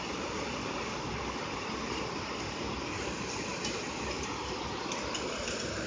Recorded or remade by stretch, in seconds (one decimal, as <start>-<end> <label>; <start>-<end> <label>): 0.0-5.9 recorded